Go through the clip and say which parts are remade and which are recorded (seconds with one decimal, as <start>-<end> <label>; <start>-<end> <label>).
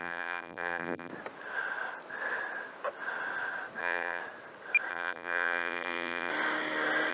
0.0-1.1 remade; 1.1-3.8 recorded; 3.8-4.2 remade; 4.2-4.9 recorded; 4.9-6.3 remade; 6.3-7.1 recorded